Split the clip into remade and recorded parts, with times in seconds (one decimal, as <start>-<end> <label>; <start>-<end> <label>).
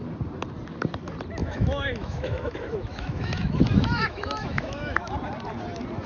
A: 0.0-1.4 recorded; 1.4-5.1 remade; 5.1-6.1 recorded